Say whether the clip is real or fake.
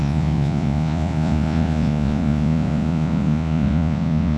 fake